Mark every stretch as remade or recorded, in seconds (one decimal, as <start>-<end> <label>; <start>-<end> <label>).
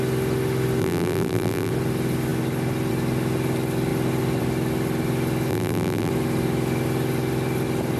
0.0-0.8 recorded; 0.8-1.7 remade; 1.7-5.5 recorded; 5.5-6.1 remade; 6.1-8.0 recorded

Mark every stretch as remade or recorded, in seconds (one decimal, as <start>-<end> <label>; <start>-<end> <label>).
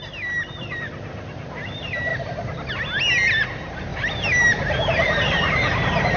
0.0-2.1 recorded; 2.1-2.7 remade; 2.7-3.9 recorded; 3.9-5.5 remade; 5.5-6.2 recorded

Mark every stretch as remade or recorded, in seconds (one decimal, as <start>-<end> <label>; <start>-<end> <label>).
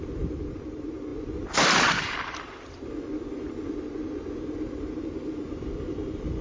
0.0-6.4 remade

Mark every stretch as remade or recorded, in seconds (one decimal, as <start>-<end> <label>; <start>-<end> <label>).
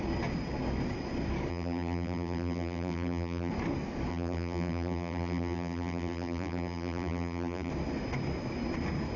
0.0-1.5 recorded; 1.5-3.5 remade; 3.5-4.1 recorded; 4.1-7.7 remade; 7.7-9.2 recorded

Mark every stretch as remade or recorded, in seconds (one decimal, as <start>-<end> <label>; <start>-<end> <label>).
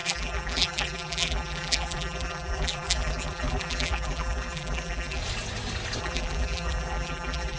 0.0-5.2 remade; 5.2-6.0 recorded; 6.0-7.6 remade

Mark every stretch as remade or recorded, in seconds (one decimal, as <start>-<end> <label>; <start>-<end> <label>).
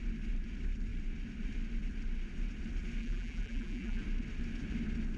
0.0-3.0 recorded; 3.0-4.0 remade; 4.0-5.2 recorded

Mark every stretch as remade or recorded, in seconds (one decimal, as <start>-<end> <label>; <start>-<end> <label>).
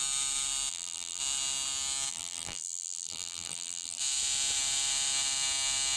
0.0-0.7 recorded; 0.7-1.2 remade; 1.2-2.1 recorded; 2.1-4.0 remade; 4.0-6.0 recorded